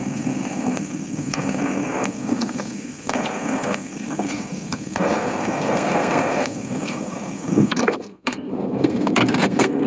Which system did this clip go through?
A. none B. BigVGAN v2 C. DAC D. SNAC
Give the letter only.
D